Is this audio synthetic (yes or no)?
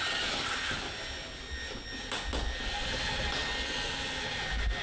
no